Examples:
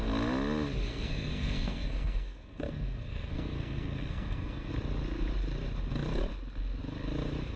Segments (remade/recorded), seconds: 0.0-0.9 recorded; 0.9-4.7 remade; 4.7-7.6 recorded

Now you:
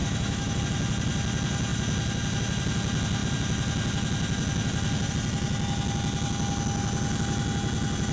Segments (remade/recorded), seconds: 0.0-0.6 remade; 0.6-8.1 recorded

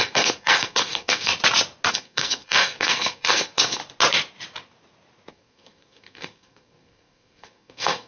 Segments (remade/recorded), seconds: 0.0-1.3 remade; 1.3-1.9 recorded; 1.9-3.8 remade; 3.8-5.3 recorded; 5.3-8.1 remade

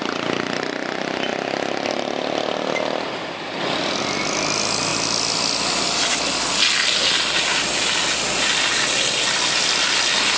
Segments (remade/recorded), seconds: 0.0-10.4 recorded

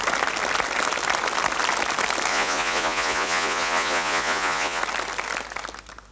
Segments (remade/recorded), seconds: 0.0-2.3 recorded; 2.3-4.8 remade; 4.8-6.1 recorded

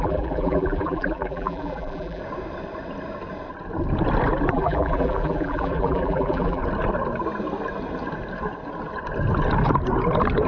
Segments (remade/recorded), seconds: 0.0-2.2 remade; 2.2-4.5 recorded; 4.5-6.6 remade; 6.6-10.5 recorded